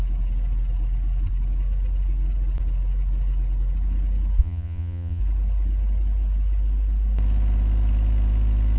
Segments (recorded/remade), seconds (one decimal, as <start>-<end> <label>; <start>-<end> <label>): 0.0-4.4 recorded; 4.4-5.2 remade; 5.2-8.8 recorded